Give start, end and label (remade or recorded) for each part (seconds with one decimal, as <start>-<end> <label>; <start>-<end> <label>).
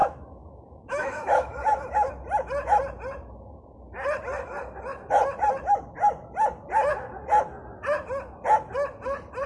0.0-2.1 remade; 2.1-9.5 recorded